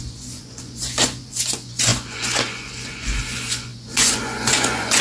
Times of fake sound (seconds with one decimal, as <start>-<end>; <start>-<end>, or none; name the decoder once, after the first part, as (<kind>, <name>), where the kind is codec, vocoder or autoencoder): 0.0-5.0 (vocoder, Vocos)